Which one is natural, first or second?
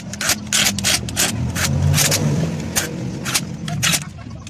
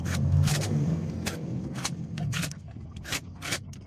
first